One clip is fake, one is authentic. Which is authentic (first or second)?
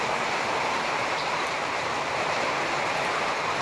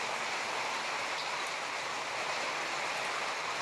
second